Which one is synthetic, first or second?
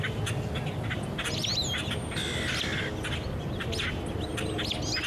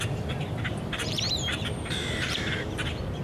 second